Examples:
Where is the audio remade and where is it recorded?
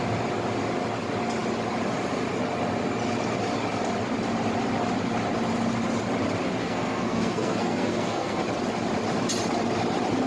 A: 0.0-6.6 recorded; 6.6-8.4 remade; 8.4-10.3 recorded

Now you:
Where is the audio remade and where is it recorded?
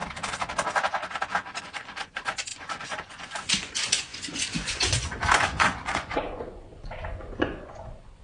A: 0.0-1.6 recorded; 1.6-8.2 remade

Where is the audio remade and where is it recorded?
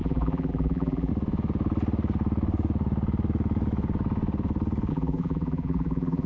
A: 0.0-1.1 remade; 1.1-4.9 recorded; 4.9-6.3 remade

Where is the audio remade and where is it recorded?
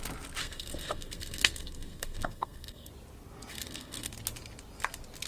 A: 0.0-0.4 recorded; 0.4-2.9 remade; 2.9-3.5 recorded; 3.5-4.1 remade; 4.1-5.3 recorded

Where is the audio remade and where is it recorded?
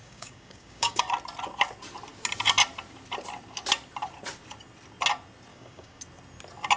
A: 0.0-1.0 remade; 1.0-5.5 recorded; 5.5-6.0 remade; 6.0-6.8 recorded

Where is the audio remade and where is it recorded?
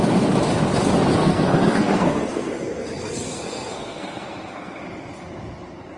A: 0.0-1.2 recorded; 1.2-4.8 remade; 4.8-6.0 recorded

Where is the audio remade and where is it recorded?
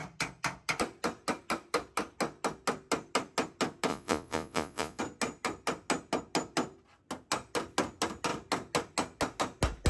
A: 0.0-3.9 recorded; 3.9-5.0 remade; 5.0-9.9 recorded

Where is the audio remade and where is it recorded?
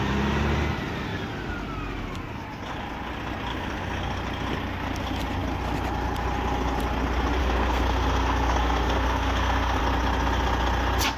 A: 0.0-3.5 recorded; 3.5-4.2 remade; 4.2-7.4 recorded; 7.4-9.8 remade; 9.8-11.2 recorded